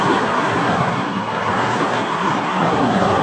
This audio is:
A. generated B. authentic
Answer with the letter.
A